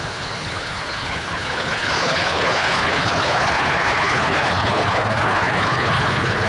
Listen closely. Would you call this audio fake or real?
fake